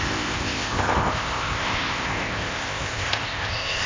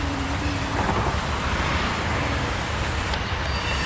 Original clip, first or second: second